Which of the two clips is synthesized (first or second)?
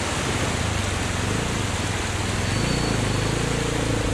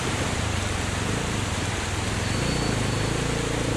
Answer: second